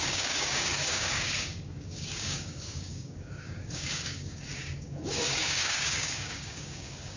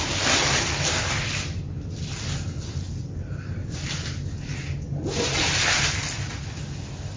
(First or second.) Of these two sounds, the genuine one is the second